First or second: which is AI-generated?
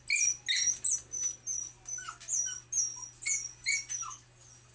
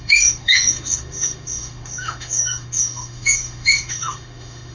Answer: second